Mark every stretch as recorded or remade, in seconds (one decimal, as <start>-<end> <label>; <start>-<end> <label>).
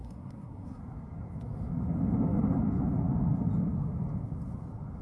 0.0-0.8 remade; 0.8-5.0 recorded